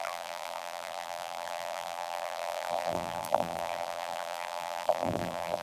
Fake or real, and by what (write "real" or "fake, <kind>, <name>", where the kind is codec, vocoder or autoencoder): fake, vocoder, BigVGAN v2